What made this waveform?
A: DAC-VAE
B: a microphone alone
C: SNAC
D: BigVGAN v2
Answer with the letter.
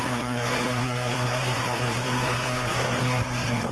C